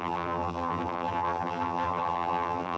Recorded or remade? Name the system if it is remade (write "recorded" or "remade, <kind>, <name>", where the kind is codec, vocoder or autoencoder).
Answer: remade, vocoder, BigVGAN v2